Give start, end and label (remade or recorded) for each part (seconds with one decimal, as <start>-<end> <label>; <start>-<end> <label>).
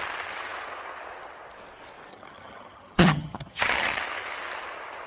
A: 0.0-2.1 recorded; 2.1-4.0 remade; 4.0-5.1 recorded